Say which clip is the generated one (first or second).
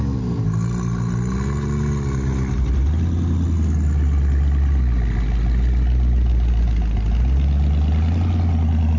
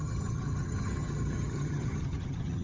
second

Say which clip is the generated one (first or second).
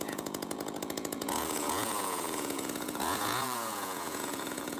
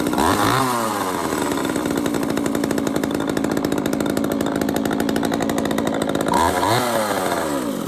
first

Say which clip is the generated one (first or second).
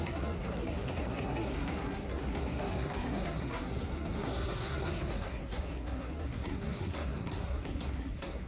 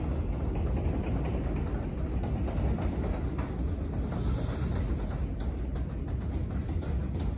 first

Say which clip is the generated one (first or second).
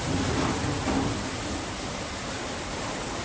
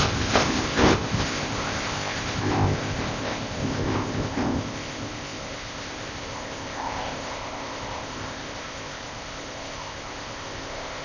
second